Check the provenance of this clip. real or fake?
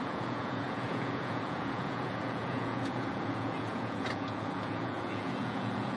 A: fake